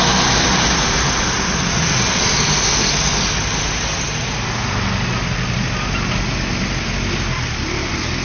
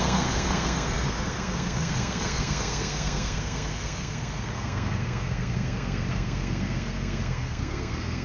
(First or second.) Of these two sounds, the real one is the first